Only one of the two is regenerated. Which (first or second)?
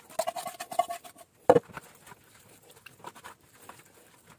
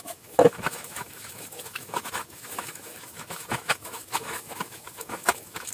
second